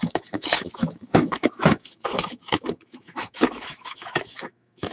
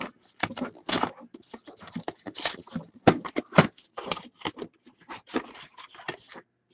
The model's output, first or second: first